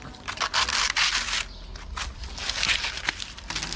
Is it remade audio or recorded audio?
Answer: recorded